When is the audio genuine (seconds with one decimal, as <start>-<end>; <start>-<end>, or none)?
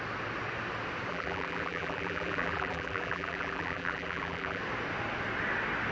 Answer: 0.0-1.1; 4.6-5.9